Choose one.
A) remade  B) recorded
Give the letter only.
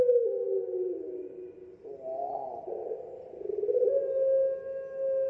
B